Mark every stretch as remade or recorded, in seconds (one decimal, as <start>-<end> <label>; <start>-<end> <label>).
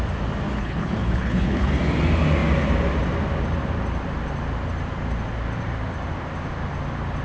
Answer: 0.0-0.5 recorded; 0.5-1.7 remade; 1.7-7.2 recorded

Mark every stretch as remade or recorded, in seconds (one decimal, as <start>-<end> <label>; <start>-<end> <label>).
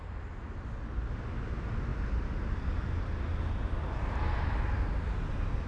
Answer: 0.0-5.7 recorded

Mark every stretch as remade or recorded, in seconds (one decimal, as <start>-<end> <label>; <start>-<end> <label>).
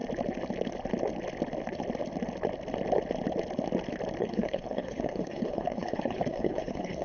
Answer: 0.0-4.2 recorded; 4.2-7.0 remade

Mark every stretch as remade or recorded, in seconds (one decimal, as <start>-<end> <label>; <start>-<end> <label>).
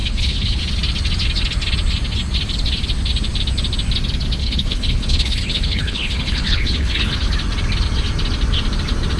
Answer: 0.0-0.6 remade; 0.6-4.4 recorded; 4.4-7.3 remade; 7.3-9.2 recorded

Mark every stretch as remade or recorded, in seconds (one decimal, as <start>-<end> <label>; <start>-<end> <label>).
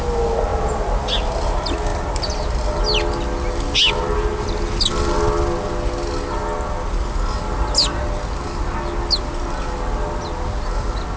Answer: 0.0-11.2 recorded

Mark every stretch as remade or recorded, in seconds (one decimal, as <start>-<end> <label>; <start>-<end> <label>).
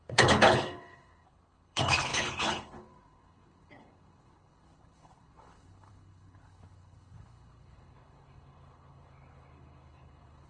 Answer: 0.0-10.5 remade